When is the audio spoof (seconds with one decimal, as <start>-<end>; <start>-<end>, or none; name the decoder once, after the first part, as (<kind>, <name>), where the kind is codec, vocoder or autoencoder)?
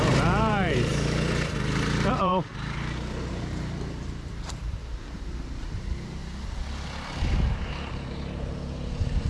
0.0-0.9 (vocoder, BigVGAN v2); 2.1-2.5; 3.3-6.2; 7.9-9.3